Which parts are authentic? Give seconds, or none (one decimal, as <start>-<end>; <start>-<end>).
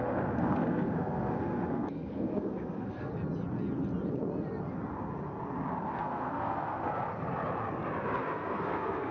3.1-6.0; 6.9-8.2